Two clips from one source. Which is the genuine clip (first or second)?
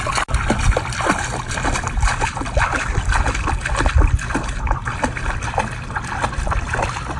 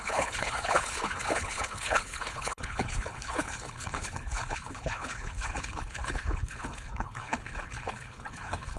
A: first